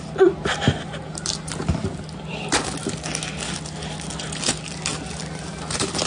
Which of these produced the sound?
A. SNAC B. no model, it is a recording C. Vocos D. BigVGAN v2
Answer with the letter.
B